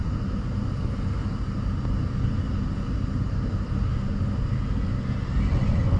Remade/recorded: recorded